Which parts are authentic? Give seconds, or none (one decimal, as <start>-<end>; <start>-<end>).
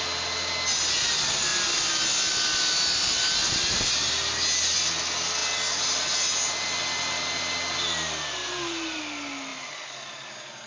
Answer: 0.0-8.4; 9.0-9.5; 10.1-10.7